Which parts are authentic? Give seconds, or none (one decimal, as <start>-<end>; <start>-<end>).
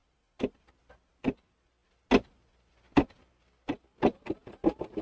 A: 0.0-5.0